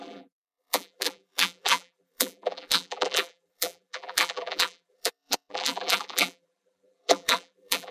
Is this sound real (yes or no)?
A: no